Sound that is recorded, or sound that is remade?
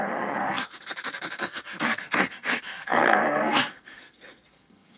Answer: remade